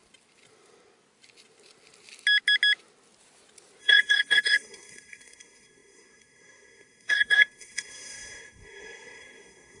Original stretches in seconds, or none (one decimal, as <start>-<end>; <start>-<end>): 0.0-3.8